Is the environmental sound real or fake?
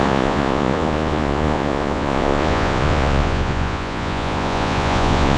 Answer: fake